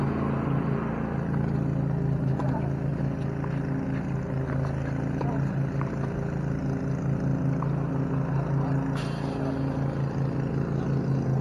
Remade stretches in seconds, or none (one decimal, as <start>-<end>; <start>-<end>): none